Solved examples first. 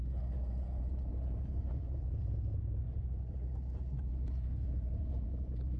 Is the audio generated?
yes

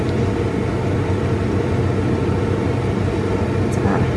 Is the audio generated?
no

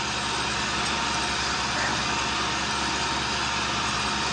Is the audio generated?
no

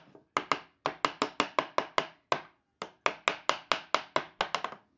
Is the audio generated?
no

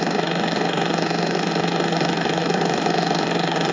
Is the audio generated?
yes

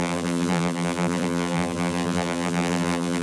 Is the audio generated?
yes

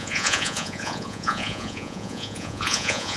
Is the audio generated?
yes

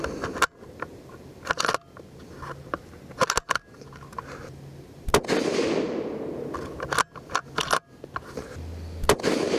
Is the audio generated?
no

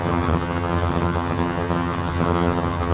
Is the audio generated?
yes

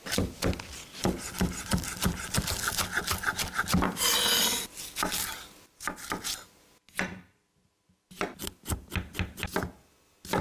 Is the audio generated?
no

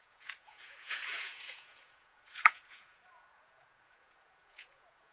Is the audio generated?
yes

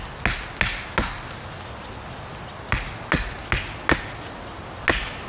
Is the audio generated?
no